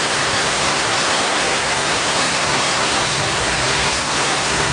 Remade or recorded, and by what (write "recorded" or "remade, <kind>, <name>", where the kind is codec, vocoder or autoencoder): remade, codec, SNAC